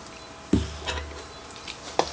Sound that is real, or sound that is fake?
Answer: real